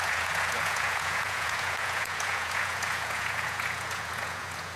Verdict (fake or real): fake